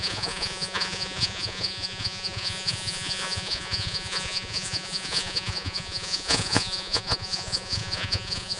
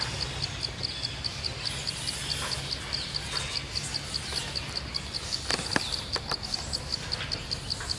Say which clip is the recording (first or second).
second